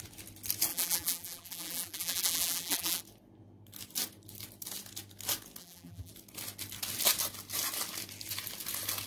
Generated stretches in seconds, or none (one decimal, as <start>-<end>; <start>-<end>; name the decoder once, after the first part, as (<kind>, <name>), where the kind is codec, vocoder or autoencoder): 0.7-3.0 (vocoder, BigVGAN v2); 5.6-6.1